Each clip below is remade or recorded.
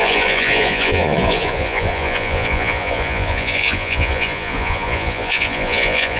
remade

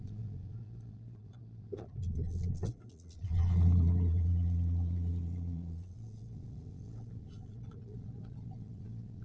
remade